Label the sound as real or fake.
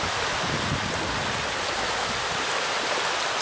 real